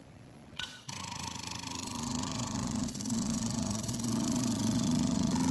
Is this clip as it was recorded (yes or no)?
no